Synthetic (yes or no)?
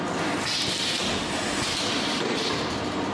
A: no